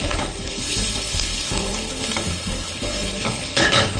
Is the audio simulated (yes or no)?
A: yes